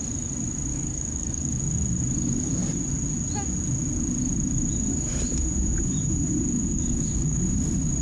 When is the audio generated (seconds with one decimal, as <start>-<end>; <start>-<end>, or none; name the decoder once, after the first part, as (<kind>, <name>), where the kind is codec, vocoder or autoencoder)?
0.7-1.6 (codec, DAC); 6.7-7.4